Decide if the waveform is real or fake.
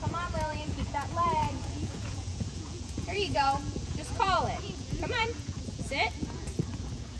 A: fake